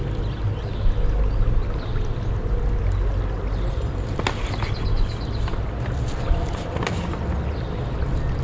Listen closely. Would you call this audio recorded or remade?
recorded